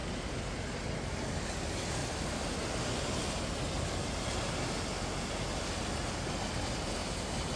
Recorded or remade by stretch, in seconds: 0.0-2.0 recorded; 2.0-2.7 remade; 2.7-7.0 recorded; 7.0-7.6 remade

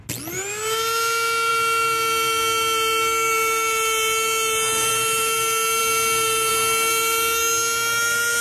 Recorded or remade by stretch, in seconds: 0.0-8.4 recorded

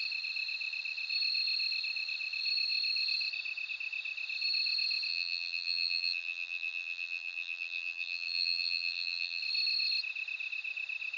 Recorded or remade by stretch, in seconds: 0.0-5.1 recorded; 5.1-9.4 remade; 9.4-11.2 recorded

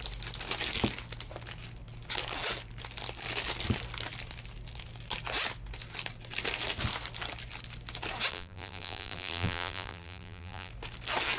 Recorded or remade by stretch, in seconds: 0.0-8.3 recorded; 8.3-10.7 remade; 10.7-11.4 recorded

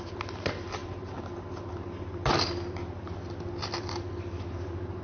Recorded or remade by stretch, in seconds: 0.0-5.0 recorded